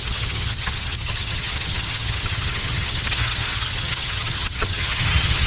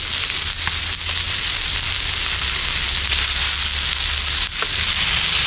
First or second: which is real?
second